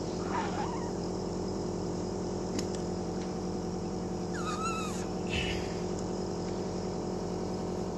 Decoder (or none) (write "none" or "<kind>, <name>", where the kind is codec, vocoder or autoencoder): vocoder, BigVGAN v2